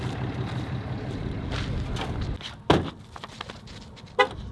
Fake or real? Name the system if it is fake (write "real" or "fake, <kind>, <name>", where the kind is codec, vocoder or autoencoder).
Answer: real